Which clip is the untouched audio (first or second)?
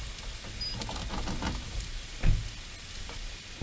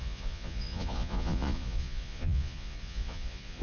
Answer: first